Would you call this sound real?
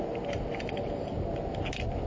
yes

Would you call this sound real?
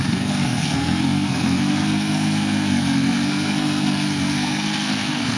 no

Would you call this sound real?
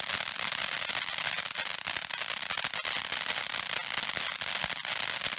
yes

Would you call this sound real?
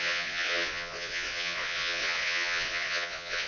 no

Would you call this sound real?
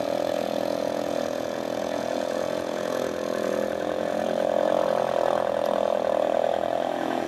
no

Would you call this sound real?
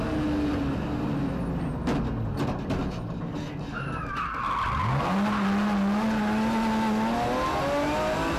yes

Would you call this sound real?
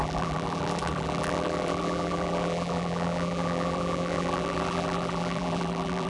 no